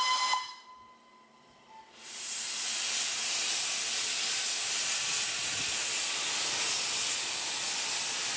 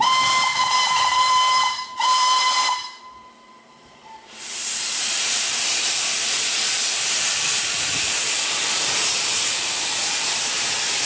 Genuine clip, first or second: first